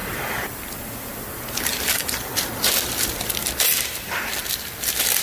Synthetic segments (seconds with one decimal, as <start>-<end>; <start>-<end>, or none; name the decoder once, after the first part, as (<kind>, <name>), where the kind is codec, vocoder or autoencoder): 0.0-3.1 (vocoder, BigVGAN v2)